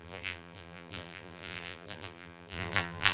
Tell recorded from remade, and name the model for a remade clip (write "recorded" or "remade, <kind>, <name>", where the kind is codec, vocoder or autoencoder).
remade, vocoder, BigVGAN v2